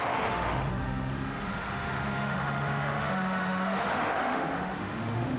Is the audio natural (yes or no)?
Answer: no